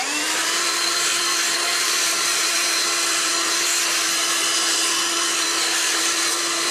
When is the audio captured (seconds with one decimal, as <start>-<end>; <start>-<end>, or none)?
none